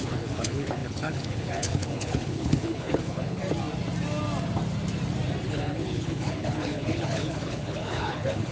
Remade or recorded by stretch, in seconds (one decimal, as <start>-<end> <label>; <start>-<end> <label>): 0.0-3.4 remade; 3.4-5.5 recorded; 5.5-8.5 remade